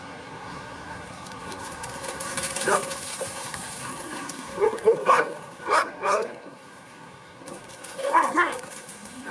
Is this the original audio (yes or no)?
no